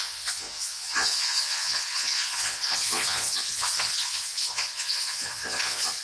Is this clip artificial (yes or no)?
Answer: yes